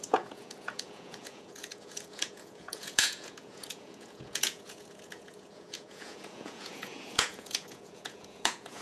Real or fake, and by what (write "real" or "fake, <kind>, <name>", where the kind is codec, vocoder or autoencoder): fake, vocoder, Vocos